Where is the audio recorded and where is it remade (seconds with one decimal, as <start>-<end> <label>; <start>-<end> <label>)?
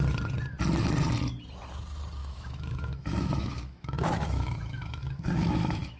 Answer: 0.0-2.2 recorded; 2.2-6.0 remade